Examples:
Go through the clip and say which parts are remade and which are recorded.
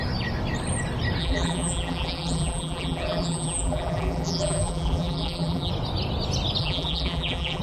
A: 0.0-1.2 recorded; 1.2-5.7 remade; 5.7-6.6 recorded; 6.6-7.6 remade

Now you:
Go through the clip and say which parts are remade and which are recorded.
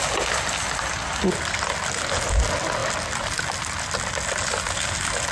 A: 0.0-5.3 recorded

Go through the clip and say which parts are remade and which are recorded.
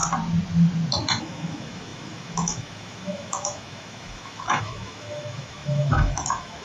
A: 0.0-1.2 recorded; 1.2-6.6 remade